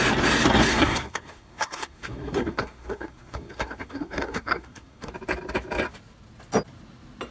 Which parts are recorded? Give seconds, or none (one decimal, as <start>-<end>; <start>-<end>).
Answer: 0.0-0.7; 5.1-7.3